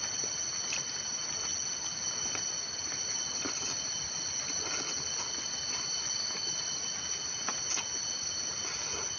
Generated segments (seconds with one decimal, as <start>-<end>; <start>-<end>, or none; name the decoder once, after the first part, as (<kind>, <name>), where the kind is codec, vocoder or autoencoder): none